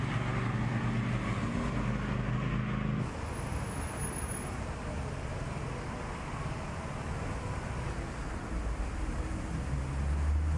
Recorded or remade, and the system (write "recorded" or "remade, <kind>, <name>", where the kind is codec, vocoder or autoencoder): recorded